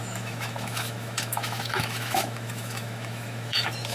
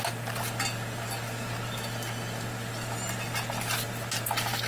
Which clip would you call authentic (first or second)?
second